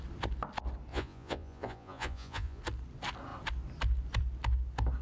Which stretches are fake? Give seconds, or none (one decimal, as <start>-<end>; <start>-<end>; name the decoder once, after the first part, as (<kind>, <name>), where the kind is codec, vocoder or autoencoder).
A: 0.9-2.6 (vocoder, Vocos)